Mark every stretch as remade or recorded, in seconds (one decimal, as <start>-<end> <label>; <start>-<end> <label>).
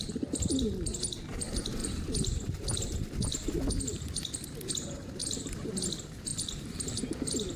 0.0-5.2 recorded; 5.2-5.7 remade; 5.7-6.3 recorded; 6.3-7.0 remade; 7.0-7.6 recorded